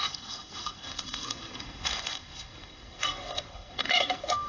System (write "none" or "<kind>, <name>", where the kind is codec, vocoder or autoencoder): codec, SNAC